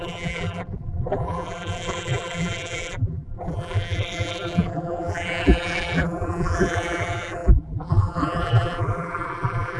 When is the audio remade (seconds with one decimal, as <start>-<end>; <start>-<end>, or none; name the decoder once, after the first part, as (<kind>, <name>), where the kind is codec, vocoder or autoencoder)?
0.0-9.8 (vocoder, BigVGAN v2)